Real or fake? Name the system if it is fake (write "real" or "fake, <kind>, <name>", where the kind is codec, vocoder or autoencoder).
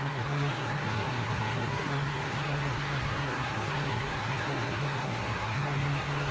fake, codec, SNAC